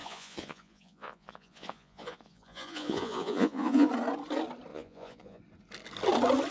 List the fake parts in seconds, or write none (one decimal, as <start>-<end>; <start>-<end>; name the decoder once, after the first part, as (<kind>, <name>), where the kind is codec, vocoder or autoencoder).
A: 0.0-3.9 (vocoder, Vocos); 4.7-5.4